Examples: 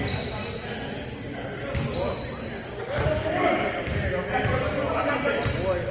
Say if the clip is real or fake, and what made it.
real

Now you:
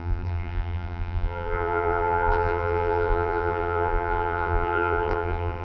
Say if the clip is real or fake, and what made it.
fake, vocoder, BigVGAN v2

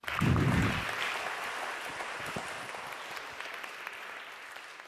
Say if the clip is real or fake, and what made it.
real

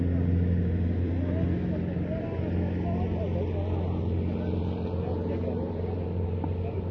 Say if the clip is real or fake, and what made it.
real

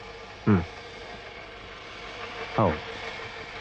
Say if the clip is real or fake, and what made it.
real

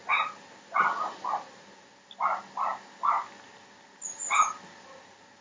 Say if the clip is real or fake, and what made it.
real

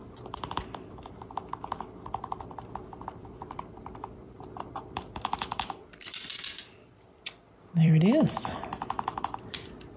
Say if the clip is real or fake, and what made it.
fake, vocoder, BigVGAN v2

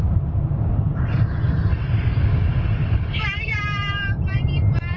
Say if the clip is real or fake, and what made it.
fake, vocoder, BigVGAN v2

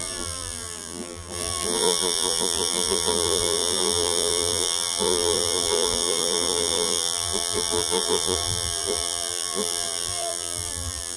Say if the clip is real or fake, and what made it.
fake, vocoder, BigVGAN v2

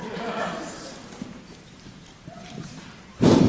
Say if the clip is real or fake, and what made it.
fake, vocoder, BigVGAN v2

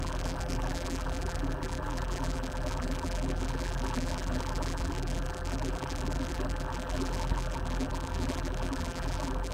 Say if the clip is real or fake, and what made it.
fake, vocoder, BigVGAN v2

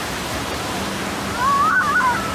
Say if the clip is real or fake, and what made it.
fake, vocoder, BigVGAN v2